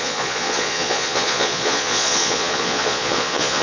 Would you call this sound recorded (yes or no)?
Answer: no